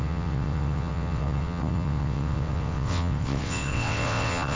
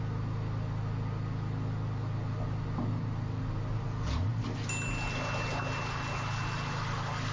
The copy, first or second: first